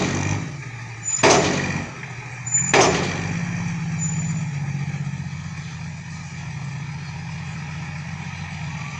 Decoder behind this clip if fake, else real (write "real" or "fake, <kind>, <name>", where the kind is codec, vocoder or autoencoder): real